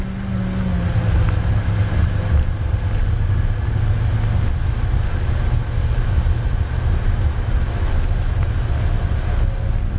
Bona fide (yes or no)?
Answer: yes